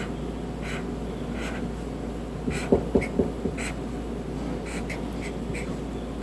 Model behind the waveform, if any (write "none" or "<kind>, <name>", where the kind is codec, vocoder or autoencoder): none